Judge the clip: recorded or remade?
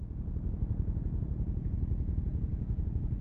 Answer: remade